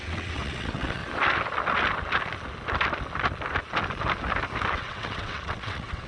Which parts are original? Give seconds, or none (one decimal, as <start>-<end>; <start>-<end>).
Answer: 1.0-4.7